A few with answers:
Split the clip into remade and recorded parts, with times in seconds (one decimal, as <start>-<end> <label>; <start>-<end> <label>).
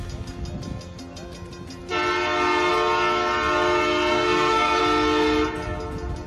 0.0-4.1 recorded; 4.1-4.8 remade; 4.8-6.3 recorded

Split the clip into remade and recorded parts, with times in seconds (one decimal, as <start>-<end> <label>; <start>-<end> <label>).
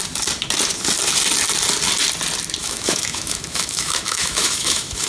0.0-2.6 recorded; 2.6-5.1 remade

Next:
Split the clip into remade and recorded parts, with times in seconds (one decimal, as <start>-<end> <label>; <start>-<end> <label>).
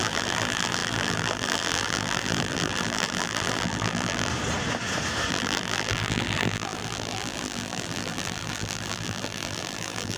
0.0-4.3 remade; 4.3-5.3 recorded; 5.3-10.2 remade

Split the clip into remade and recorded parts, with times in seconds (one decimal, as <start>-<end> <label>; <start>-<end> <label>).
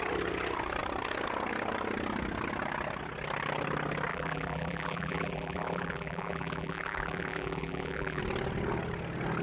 0.0-4.1 recorded; 4.1-8.2 remade; 8.2-9.4 recorded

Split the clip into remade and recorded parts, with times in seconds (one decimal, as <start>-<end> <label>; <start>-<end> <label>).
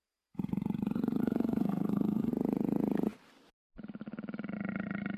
0.0-1.2 recorded; 1.2-2.3 remade; 2.3-5.2 recorded